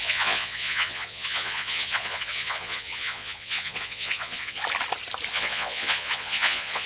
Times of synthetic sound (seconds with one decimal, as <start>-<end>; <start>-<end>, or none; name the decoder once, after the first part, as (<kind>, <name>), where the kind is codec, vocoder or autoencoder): 0.0-4.6 (vocoder, Vocos); 5.3-6.9